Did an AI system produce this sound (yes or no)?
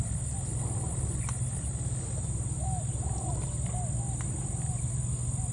no